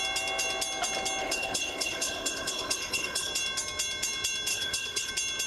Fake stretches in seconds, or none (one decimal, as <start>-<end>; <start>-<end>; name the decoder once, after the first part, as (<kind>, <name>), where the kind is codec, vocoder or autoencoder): 1.2-3.3 (codec, HILCodec); 4.5-5.1